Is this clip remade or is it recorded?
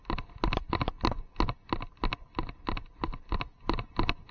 recorded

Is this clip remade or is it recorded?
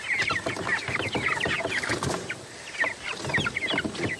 recorded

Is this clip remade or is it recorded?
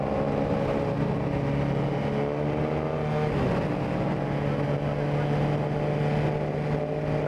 recorded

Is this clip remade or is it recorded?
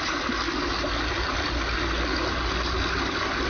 recorded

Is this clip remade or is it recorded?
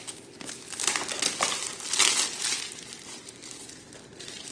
recorded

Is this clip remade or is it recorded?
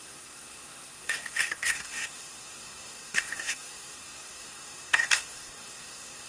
remade